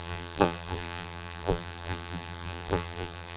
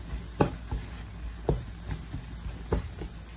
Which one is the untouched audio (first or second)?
second